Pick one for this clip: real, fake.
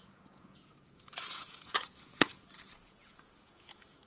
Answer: fake